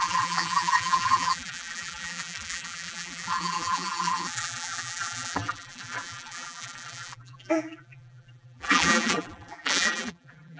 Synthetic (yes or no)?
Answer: yes